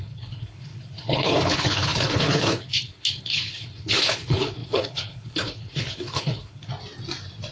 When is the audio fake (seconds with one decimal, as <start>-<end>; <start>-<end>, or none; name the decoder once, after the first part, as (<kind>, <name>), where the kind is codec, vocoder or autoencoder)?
0.0-6.7 (codec, HILCodec)